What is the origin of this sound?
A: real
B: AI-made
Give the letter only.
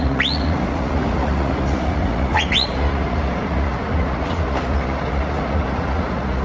B